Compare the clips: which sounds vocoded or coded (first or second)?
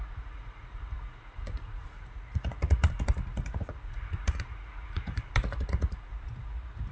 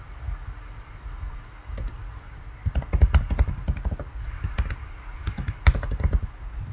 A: first